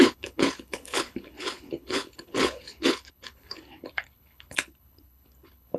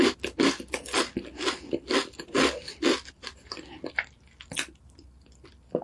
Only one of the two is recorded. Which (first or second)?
second